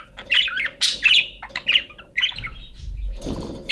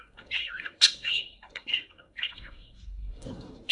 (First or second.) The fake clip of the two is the second